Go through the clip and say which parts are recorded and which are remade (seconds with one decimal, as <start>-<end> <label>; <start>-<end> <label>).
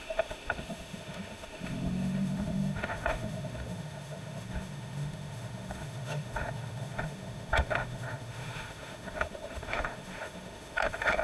0.0-11.2 remade